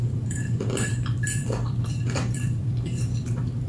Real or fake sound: fake